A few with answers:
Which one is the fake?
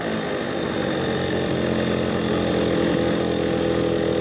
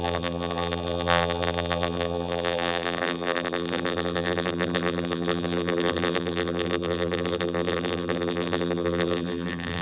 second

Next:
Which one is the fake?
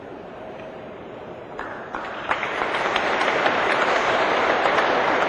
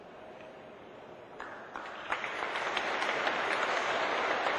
first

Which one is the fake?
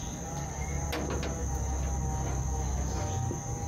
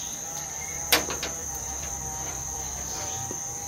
second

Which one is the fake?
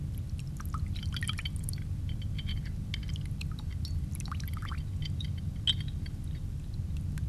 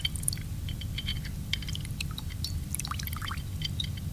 second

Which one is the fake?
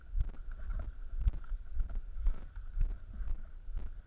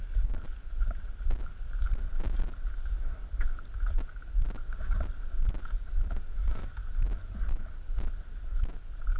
first